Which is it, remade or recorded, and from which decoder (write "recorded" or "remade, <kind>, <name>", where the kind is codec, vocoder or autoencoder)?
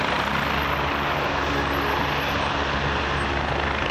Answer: recorded